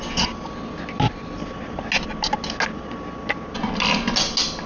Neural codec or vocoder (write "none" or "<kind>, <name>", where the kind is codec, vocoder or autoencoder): none